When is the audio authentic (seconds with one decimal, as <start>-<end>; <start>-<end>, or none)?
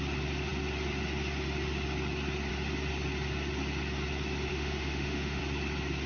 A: 0.0-4.5; 5.4-6.1